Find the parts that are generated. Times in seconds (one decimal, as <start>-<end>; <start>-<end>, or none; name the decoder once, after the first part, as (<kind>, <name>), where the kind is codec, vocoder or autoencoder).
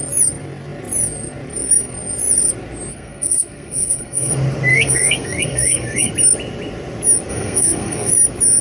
2.9-4.3 (codec, SNAC); 4.7-6.1; 7.3-8.1